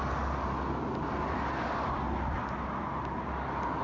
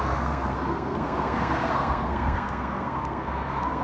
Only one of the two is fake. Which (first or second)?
second